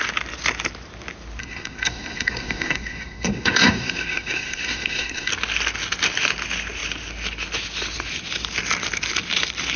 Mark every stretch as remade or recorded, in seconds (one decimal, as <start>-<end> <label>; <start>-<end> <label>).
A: 0.0-1.4 recorded; 1.4-5.3 remade; 5.3-9.8 recorded